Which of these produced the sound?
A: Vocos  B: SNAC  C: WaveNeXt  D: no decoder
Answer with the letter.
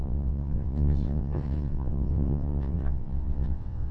C